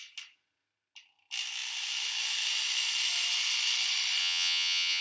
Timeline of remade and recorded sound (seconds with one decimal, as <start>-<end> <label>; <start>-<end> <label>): 0.0-4.2 recorded; 4.2-5.0 remade